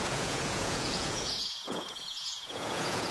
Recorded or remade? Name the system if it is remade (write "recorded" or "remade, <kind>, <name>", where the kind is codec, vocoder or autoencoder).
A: remade, vocoder, Vocos